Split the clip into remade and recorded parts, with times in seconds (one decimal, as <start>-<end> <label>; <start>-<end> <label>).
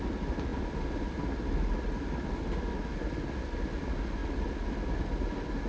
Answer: 0.0-5.7 recorded